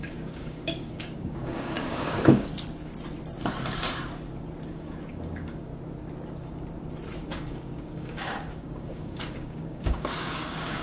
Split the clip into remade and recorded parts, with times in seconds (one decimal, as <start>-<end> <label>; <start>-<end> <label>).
0.0-2.5 remade; 2.5-4.7 recorded; 4.7-5.7 remade; 5.7-7.3 recorded; 7.3-10.8 remade